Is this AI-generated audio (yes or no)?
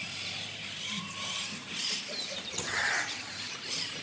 yes